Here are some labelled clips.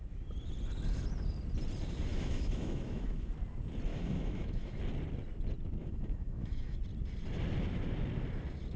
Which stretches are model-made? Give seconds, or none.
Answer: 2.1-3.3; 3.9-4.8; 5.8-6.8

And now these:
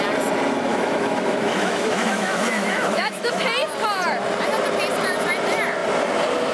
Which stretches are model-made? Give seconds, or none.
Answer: 0.7-3.3

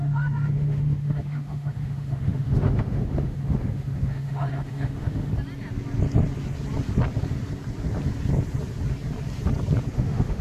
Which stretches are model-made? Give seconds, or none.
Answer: 0.0-5.3; 9.9-10.4

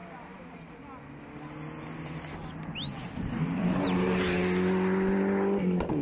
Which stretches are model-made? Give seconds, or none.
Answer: none

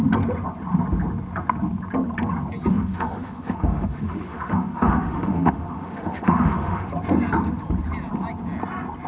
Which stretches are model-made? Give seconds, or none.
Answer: 2.7-6.9

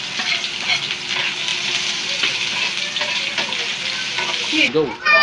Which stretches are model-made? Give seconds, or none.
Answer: none

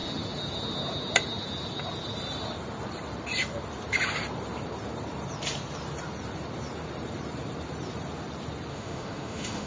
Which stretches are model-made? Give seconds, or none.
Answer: 8.7-9.7

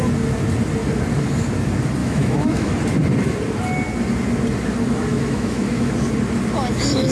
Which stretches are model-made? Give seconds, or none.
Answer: 2.0-2.7; 5.1-5.9